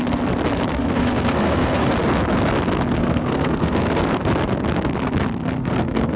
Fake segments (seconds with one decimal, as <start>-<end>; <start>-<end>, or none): 0.7-1.9; 3.0-4.0; 5.6-6.2